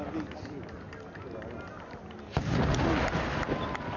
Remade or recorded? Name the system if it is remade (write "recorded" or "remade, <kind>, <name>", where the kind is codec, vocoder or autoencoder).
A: recorded